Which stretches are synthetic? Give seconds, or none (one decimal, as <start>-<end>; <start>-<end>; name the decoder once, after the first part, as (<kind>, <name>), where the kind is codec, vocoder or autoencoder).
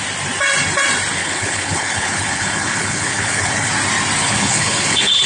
1.2-3.7 (codec, HILCodec); 4.2-5.3